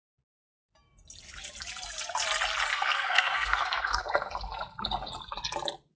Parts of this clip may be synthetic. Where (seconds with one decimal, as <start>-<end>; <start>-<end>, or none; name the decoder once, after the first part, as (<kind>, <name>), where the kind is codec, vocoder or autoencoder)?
2.7-4.0 (codec, SNAC)